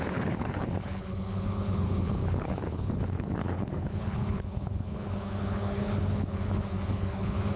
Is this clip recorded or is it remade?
remade